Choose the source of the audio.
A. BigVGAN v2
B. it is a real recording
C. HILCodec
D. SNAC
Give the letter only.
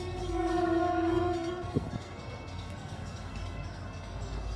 D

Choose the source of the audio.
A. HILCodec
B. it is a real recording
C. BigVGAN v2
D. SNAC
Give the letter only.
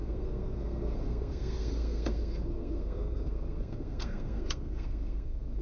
D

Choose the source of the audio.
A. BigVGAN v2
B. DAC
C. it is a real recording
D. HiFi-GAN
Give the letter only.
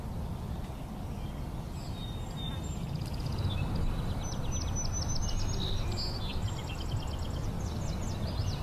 C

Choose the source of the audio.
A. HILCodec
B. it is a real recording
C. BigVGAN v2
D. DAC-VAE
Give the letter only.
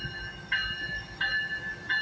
B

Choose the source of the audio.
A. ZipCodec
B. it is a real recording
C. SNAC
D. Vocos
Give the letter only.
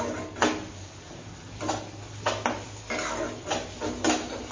B